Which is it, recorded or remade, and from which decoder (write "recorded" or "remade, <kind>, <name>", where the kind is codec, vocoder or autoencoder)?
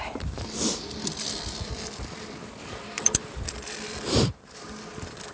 remade, vocoder, BigVGAN v2